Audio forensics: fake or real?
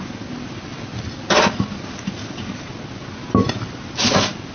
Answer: real